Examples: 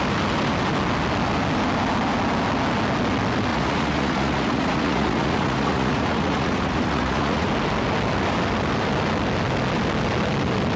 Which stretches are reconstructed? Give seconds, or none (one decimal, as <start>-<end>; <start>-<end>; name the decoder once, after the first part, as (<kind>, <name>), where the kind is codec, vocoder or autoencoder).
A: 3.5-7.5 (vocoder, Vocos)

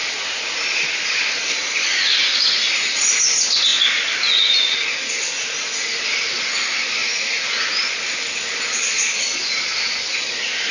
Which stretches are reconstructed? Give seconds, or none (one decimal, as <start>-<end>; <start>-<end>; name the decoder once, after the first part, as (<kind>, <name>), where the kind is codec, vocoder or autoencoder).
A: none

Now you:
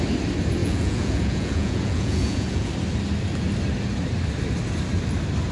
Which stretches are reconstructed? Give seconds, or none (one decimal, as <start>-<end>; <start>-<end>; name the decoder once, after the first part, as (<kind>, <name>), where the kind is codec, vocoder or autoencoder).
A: 0.6-2.7 (vocoder, Vocos)

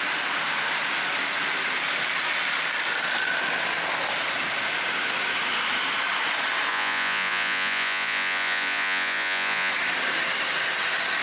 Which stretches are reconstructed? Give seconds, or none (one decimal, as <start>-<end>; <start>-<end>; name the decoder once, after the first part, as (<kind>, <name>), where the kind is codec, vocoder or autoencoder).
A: 6.7-9.7 (vocoder, Vocos)

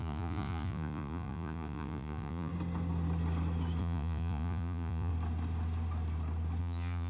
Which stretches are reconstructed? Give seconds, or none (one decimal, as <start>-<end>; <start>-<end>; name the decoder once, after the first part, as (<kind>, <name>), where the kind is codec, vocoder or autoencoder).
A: 0.0-2.5 (vocoder, Vocos); 3.8-5.1; 6.6-7.1

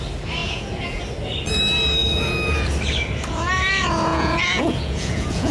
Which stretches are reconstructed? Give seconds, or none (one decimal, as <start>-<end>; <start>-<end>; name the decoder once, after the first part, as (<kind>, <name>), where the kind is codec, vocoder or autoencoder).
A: 0.4-1.0 (vocoder, Vocos); 2.0-2.7; 4.1-5.5